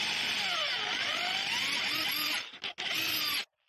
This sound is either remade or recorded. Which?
recorded